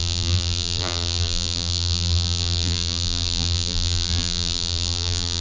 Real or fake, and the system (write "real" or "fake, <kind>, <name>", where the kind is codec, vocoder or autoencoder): fake, vocoder, BigVGAN v2